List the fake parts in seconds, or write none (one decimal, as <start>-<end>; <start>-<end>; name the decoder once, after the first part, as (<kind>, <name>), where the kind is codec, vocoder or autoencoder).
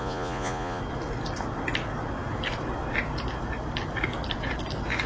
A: 0.0-0.8 (vocoder, Vocos)